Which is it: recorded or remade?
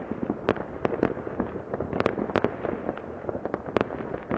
recorded